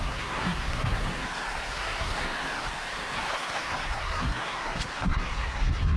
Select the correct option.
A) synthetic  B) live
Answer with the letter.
A